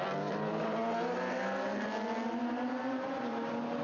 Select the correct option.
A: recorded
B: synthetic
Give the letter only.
A